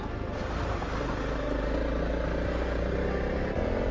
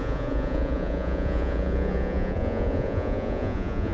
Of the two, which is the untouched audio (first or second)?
first